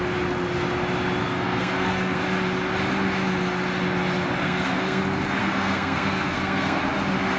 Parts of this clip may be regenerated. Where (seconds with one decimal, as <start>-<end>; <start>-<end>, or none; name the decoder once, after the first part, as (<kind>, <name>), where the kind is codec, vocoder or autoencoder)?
1.2-2.2 (codec, SNAC); 4.4-5.0; 5.4-6.8